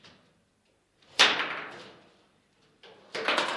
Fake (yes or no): yes